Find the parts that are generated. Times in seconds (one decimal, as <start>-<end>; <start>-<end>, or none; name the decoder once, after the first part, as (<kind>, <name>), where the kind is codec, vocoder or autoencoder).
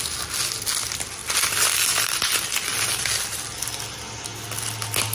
none